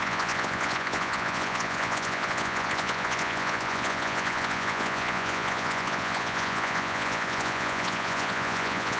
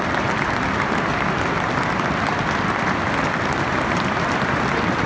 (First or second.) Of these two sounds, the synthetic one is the first